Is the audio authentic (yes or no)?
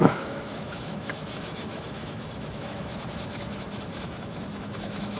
no